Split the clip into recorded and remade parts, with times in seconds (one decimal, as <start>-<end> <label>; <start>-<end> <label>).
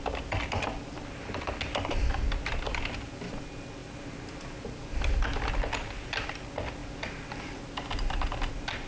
0.0-8.9 recorded